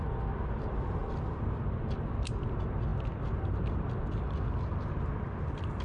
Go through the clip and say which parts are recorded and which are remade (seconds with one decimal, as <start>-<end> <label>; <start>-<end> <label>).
0.0-5.8 recorded